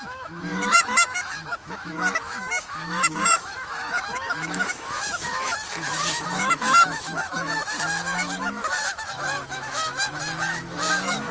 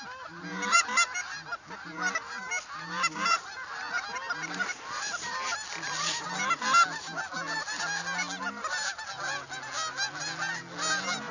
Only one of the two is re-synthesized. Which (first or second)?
first